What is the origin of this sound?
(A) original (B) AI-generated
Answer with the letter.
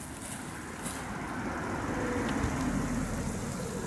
A